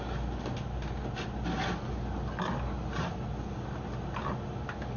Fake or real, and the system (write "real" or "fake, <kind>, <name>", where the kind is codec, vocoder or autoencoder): real